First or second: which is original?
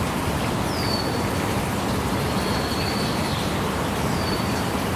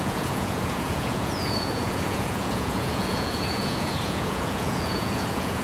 first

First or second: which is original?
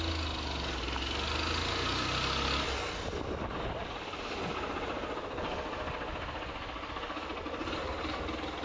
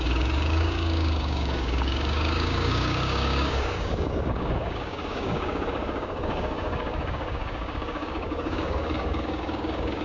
first